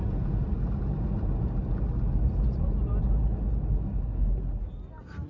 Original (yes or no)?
yes